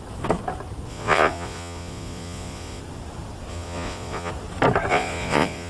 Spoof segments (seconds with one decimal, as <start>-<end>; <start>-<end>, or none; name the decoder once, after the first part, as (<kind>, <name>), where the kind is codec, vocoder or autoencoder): 0.9-2.8 (vocoder, Vocos); 3.5-4.3; 4.9-5.7